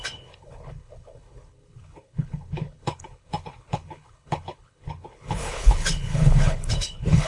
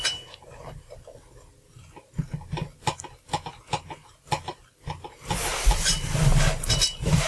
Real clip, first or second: second